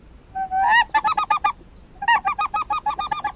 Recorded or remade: recorded